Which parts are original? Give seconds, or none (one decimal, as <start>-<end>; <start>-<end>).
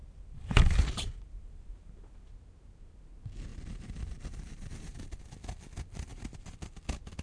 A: 1.9-3.5; 5.2-6.1; 6.8-7.2